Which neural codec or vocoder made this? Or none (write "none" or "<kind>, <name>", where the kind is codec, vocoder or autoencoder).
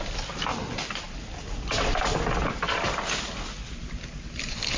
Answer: none